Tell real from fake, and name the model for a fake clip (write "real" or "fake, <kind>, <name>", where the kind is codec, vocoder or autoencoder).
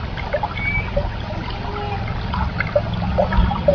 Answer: real